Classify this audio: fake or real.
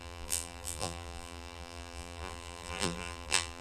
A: fake